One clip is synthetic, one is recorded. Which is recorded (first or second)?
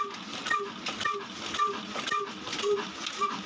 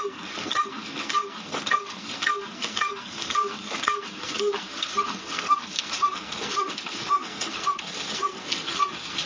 first